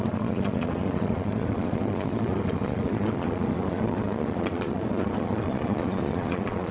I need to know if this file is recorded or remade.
remade